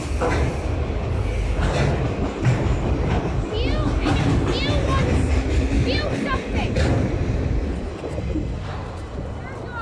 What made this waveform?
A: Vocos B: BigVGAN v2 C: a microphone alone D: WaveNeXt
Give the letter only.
C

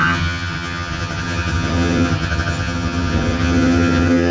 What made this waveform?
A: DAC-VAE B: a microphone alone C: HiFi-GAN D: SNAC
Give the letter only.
C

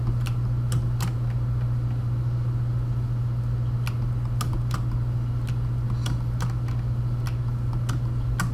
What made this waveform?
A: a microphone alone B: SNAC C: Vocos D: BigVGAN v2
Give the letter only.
A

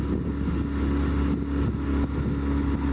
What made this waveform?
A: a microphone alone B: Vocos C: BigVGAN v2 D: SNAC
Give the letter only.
A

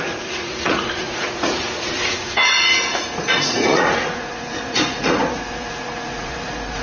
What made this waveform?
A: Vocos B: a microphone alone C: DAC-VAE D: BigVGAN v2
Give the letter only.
A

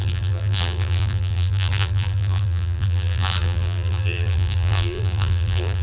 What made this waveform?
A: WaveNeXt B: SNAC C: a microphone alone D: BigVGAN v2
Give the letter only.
D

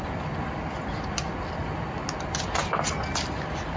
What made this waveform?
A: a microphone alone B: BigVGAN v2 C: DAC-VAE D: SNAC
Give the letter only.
A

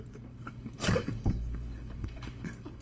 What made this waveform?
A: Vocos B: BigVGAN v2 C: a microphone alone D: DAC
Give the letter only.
D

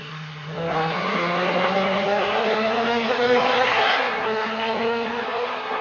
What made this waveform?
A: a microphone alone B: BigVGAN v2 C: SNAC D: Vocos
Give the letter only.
C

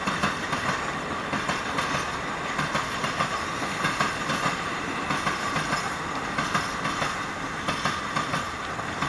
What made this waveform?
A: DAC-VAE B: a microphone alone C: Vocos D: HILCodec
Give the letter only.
B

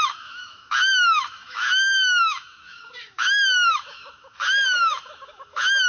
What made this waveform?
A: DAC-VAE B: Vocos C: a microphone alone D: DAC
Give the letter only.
A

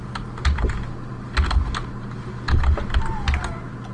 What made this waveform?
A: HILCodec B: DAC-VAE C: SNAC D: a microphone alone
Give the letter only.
D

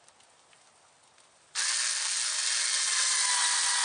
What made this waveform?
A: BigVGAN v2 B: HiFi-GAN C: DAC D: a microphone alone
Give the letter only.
D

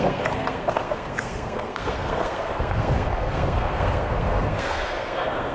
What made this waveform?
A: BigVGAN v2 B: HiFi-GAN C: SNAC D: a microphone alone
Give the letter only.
C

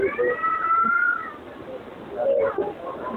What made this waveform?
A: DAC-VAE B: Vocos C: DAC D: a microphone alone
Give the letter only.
D